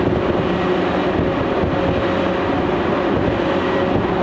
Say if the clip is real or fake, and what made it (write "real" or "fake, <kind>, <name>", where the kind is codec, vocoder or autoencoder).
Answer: real